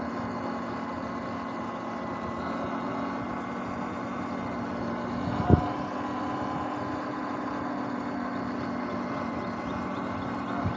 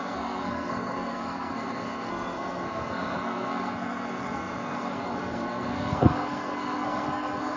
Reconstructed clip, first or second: second